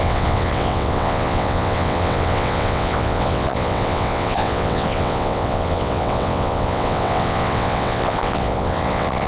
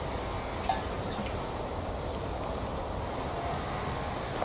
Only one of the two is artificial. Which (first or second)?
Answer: first